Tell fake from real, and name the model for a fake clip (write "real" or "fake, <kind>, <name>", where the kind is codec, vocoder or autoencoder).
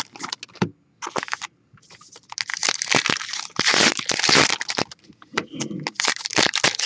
real